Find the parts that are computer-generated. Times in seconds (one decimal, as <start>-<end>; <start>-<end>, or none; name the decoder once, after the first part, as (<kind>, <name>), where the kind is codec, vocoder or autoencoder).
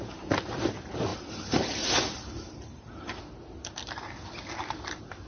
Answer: 1.1-3.2 (vocoder, BigVGAN v2)